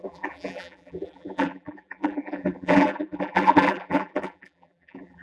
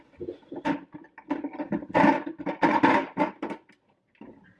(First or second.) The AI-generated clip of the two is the first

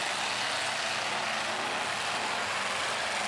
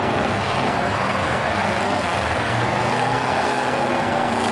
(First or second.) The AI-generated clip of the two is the second